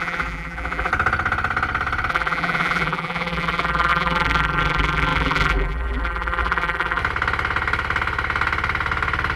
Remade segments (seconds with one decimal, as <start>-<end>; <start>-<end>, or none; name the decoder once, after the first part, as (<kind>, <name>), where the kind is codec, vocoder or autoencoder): 0.0-0.9 (vocoder, BigVGAN v2); 2.1-7.0